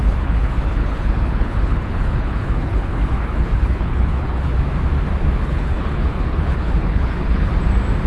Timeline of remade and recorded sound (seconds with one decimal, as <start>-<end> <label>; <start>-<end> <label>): 0.0-4.5 remade; 4.5-5.4 recorded; 5.4-7.5 remade; 7.5-8.1 recorded